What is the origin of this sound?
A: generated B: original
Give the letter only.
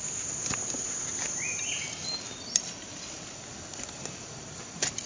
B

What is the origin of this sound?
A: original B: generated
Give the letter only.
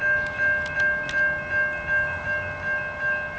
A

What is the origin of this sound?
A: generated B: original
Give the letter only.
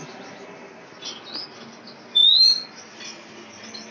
B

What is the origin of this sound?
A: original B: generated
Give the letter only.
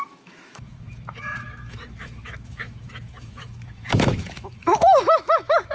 B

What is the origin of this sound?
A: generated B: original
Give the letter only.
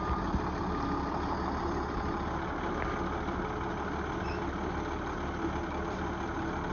B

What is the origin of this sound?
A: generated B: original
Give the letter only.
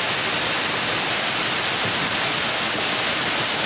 B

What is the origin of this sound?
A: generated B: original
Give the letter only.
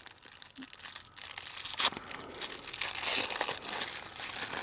B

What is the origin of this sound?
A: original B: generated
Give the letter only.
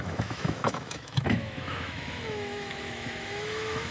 B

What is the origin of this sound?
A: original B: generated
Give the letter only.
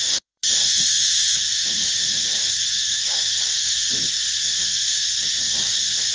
B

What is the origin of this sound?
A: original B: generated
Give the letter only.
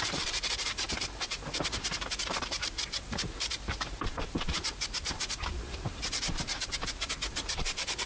B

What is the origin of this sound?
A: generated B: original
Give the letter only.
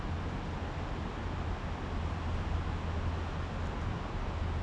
B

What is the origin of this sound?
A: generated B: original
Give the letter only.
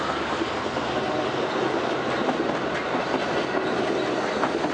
B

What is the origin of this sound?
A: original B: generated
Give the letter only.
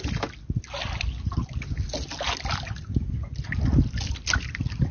A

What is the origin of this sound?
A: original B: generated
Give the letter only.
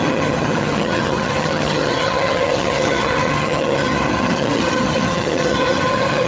B